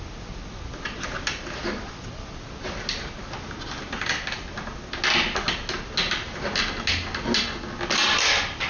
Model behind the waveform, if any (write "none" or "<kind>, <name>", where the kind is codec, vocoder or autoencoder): none